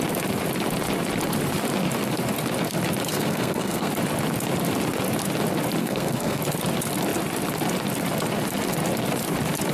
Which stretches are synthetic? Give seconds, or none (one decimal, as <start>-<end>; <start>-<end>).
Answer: 3.1-3.9; 5.8-6.4